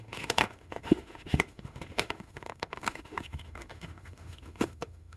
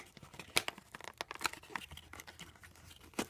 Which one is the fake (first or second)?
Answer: first